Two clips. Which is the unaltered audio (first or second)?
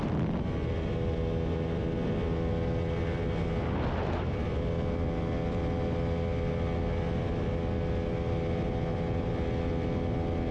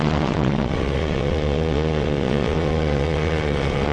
first